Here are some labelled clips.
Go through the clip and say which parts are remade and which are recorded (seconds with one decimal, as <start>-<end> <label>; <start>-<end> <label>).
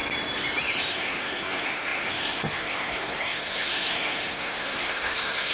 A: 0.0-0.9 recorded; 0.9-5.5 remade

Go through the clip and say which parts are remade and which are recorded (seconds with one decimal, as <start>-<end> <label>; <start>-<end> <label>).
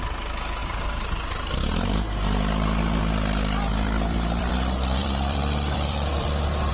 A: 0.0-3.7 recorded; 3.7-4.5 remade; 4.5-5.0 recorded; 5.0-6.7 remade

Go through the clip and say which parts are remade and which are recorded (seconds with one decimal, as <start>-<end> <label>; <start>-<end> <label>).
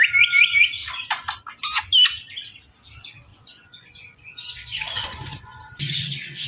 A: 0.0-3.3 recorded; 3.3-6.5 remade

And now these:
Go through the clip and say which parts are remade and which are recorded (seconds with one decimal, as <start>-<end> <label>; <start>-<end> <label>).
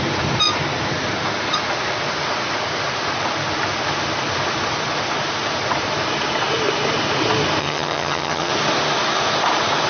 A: 0.0-7.6 recorded; 7.6-8.5 remade; 8.5-9.9 recorded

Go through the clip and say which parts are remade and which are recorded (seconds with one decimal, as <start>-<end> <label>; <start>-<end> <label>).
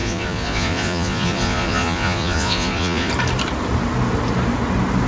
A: 0.0-3.1 remade; 3.1-5.1 recorded